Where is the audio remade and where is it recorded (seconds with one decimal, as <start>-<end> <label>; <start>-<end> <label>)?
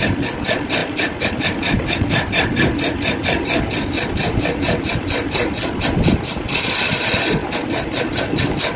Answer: 0.0-8.8 recorded